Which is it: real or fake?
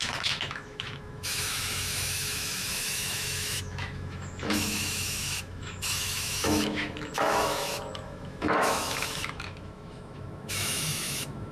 fake